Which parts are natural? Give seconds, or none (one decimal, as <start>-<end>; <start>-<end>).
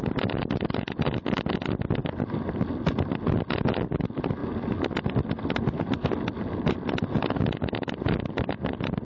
0.0-9.0